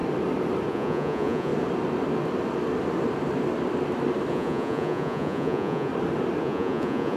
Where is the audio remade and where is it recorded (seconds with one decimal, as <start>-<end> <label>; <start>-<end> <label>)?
0.0-0.7 recorded; 0.7-1.5 remade; 1.5-4.3 recorded; 4.3-5.9 remade; 5.9-6.4 recorded; 6.4-7.2 remade